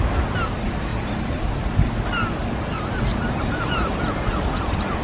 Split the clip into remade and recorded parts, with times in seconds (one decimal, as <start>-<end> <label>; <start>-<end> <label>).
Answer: 0.0-3.1 recorded; 3.1-3.9 remade; 3.9-5.0 recorded